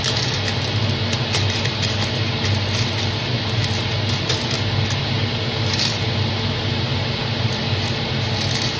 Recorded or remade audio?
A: recorded